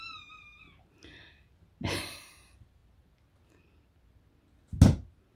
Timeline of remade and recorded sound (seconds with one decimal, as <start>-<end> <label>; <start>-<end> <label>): 0.0-5.4 recorded